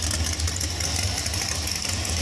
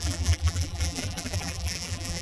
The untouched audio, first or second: first